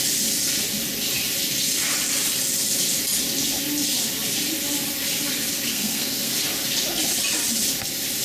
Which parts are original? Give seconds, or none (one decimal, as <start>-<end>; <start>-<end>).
0.0-5.7; 6.3-8.2